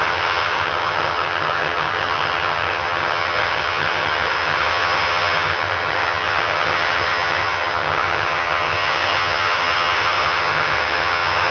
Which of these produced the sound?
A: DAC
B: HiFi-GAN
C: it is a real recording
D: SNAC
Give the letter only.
B